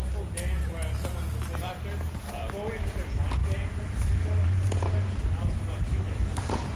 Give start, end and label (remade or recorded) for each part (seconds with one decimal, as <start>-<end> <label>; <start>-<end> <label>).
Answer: 0.0-3.4 recorded; 3.4-6.8 remade